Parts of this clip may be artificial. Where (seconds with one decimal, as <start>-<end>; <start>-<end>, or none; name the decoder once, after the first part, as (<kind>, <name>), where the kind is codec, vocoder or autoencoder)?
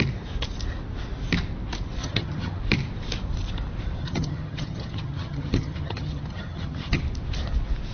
2.0-2.6 (vocoder, HiFi-GAN); 4.0-7.0